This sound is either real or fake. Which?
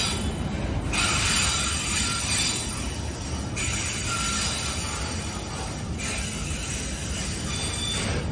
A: real